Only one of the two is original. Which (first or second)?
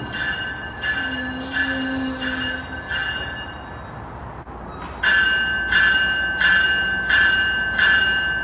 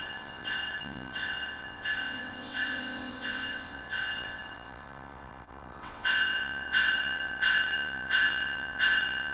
first